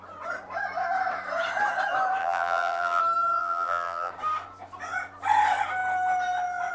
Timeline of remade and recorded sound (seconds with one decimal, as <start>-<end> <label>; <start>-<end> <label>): 0.0-2.2 recorded; 2.2-3.0 remade; 3.0-3.4 recorded; 3.4-4.1 remade; 4.1-6.7 recorded